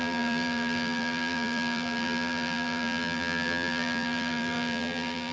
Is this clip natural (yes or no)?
no